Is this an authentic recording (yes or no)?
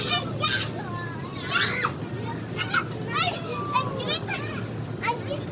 yes